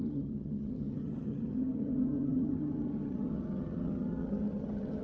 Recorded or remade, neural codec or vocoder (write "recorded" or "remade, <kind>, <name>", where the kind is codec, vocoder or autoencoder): remade, vocoder, HiFi-GAN